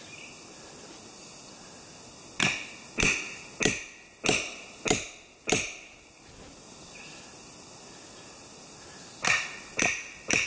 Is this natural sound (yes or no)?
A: yes